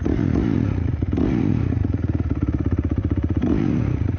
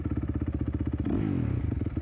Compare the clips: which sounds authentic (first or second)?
second